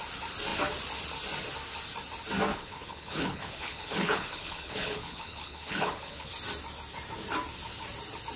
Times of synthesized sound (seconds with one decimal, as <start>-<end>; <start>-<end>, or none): 2.5-6.3